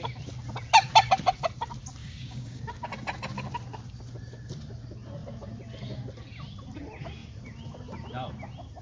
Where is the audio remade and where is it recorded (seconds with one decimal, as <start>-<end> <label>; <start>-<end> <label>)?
0.0-2.0 recorded; 2.0-2.6 remade; 2.6-8.8 recorded